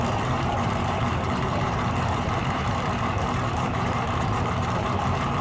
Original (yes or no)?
no